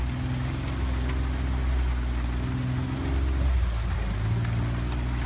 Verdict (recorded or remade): recorded